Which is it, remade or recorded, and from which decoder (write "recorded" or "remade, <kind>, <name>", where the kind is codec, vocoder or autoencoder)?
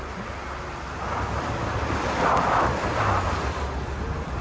recorded